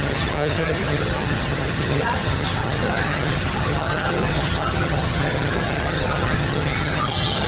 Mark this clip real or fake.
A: fake